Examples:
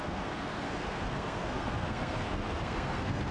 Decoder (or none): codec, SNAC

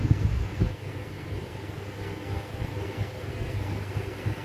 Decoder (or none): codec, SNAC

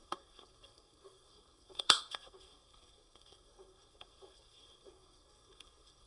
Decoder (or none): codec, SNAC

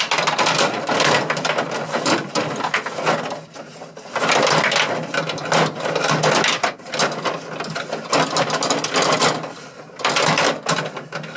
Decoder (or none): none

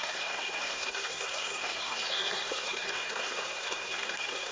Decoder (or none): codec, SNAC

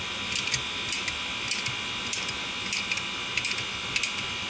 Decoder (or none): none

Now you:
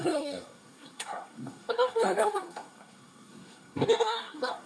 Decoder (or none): codec, SNAC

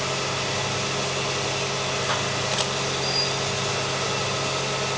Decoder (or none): none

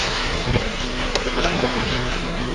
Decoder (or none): codec, SNAC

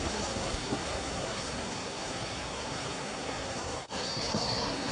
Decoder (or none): codec, SNAC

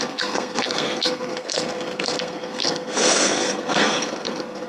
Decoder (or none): codec, SNAC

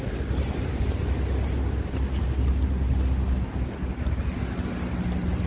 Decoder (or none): none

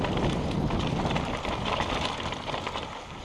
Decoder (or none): none